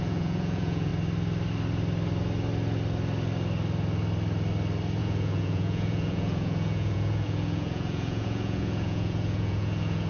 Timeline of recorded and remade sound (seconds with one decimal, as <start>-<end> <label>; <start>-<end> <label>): 0.0-0.9 remade; 0.9-5.0 recorded; 5.0-10.1 remade